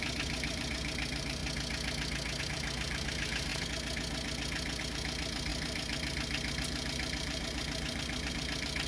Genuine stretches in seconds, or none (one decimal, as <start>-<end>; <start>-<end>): 1.4-2.4; 3.5-4.8